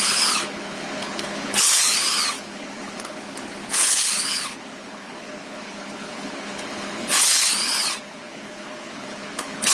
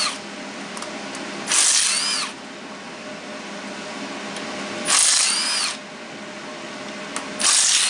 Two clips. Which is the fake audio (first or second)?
first